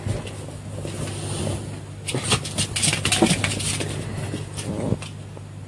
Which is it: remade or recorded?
recorded